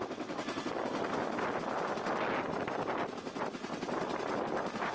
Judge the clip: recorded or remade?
recorded